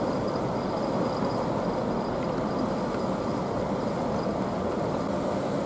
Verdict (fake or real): real